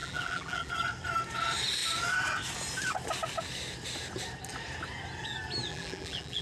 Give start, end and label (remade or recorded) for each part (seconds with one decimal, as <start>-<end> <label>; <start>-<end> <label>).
0.0-0.7 remade; 0.7-5.7 recorded; 5.7-6.4 remade